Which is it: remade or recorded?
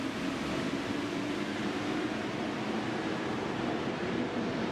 recorded